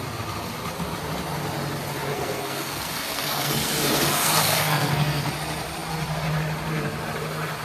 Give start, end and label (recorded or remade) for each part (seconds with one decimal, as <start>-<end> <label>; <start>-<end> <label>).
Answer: 0.0-2.1 recorded; 2.1-5.3 remade; 5.3-7.6 recorded